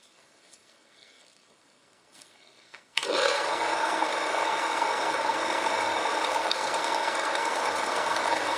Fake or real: fake